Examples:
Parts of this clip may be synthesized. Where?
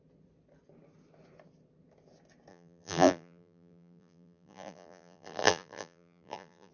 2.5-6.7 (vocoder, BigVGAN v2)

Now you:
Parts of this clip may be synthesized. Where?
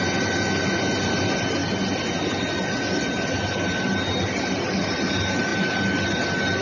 none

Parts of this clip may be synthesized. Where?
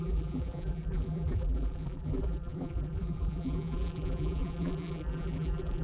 0.0-5.8 (vocoder, BigVGAN v2)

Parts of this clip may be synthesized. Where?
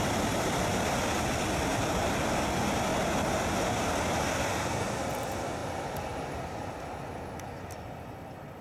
1.7-2.4 (vocoder, BigVGAN v2)